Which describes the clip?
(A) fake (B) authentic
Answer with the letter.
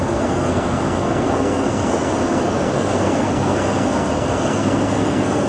A